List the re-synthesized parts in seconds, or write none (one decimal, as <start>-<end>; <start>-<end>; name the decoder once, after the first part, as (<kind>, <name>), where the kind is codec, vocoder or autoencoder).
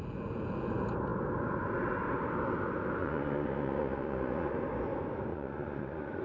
3.0-4.5 (vocoder, Vocos); 5.3-6.2